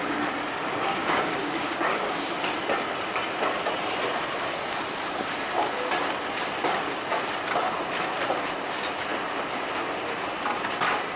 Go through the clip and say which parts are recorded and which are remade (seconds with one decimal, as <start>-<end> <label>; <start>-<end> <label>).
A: 0.0-1.0 recorded; 1.0-2.2 remade; 2.2-11.2 recorded